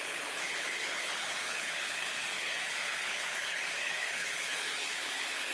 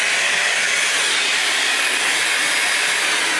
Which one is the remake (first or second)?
first